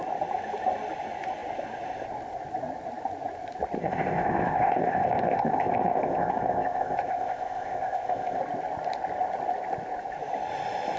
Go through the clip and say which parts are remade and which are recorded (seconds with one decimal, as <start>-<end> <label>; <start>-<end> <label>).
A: 0.0-3.8 recorded; 3.8-8.4 remade; 8.4-11.0 recorded